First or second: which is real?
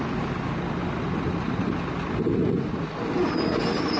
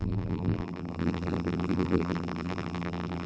first